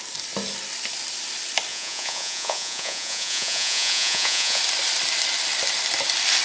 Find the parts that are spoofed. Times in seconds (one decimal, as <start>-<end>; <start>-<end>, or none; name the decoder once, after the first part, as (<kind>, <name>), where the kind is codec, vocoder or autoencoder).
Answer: 1.7-4.6 (vocoder, Vocos)